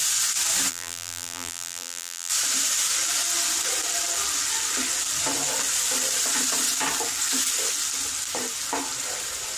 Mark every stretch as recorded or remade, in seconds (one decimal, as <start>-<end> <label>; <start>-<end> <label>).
0.0-0.7 recorded; 0.7-2.3 remade; 2.3-9.6 recorded